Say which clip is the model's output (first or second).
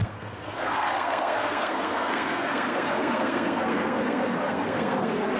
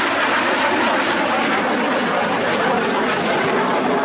first